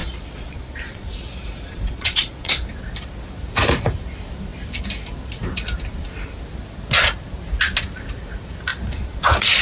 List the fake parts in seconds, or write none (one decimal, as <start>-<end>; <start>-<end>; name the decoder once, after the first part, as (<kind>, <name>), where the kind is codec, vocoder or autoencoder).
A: 0.0-2.7 (vocoder, Vocos); 8.7-9.6